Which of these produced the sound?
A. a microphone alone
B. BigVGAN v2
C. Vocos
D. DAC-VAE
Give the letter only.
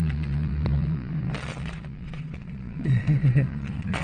C